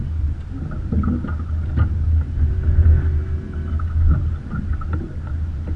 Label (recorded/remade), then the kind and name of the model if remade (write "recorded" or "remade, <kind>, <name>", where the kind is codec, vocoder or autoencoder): recorded